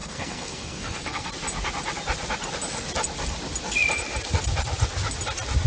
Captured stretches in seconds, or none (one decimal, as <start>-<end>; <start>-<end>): 1.3-5.7